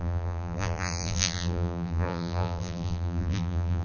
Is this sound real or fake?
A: fake